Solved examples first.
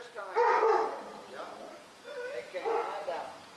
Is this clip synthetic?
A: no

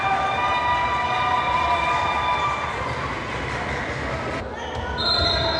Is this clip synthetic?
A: no